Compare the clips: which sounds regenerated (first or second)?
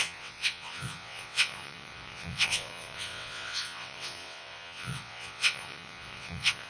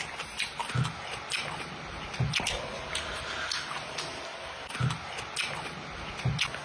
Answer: first